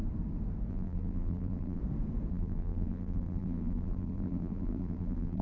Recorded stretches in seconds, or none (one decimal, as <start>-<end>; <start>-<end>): 0.0-0.7; 1.8-2.3